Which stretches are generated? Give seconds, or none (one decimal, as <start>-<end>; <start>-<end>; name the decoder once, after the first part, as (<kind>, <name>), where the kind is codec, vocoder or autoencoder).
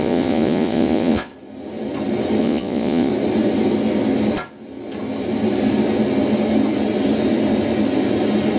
0.0-1.3 (vocoder, Vocos); 2.4-3.1